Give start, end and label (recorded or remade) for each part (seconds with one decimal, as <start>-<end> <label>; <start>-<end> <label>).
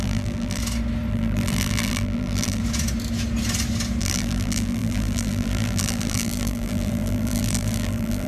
0.0-0.6 remade; 0.6-1.1 recorded; 1.1-2.6 remade; 2.6-4.0 recorded; 4.0-8.3 remade